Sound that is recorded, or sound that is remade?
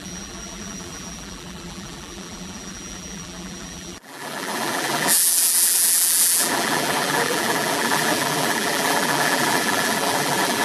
remade